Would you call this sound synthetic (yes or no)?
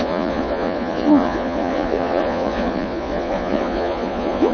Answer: yes